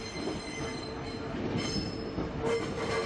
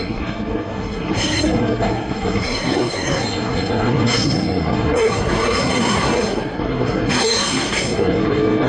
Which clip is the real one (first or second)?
first